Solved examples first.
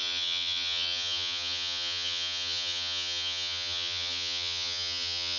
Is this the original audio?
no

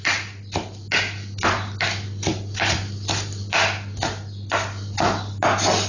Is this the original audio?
yes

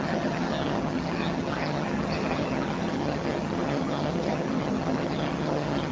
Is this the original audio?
no